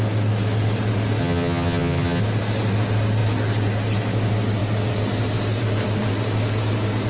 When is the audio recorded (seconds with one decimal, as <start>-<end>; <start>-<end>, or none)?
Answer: 0.0-1.2; 2.2-7.1